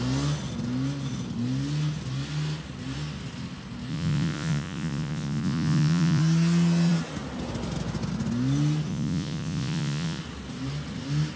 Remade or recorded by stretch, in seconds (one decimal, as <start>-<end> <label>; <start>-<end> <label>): 0.0-3.9 recorded; 3.9-6.2 remade; 6.2-8.9 recorded; 8.9-10.2 remade; 10.2-11.4 recorded